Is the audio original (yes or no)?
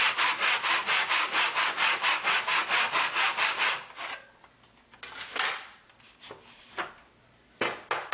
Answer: yes